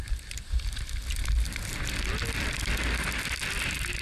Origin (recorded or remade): recorded